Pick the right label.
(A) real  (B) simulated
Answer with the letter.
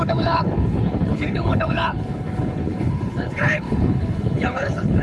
B